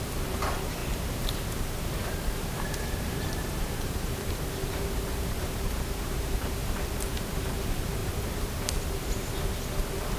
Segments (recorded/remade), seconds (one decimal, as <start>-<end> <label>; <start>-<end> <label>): 0.0-6.6 remade; 6.6-7.1 recorded; 7.1-8.0 remade; 8.0-10.2 recorded